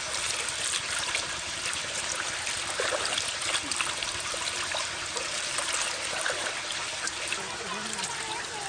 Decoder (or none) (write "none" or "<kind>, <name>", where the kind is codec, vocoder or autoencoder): none